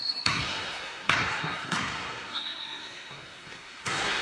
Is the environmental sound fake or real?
fake